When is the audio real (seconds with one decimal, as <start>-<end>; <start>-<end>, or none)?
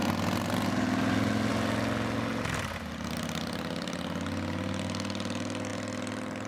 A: 0.0-5.7